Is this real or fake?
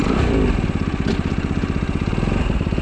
fake